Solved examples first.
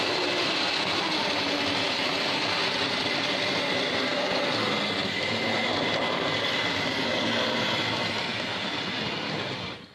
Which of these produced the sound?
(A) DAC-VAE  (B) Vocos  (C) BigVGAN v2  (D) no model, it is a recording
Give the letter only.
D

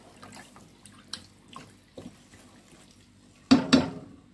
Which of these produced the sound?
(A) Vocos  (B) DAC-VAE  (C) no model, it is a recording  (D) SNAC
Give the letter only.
C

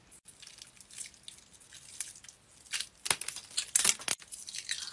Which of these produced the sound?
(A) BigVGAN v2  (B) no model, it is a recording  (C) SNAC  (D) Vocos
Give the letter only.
B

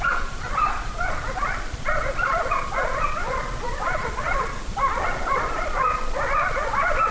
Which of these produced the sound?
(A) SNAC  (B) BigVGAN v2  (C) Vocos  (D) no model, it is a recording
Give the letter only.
C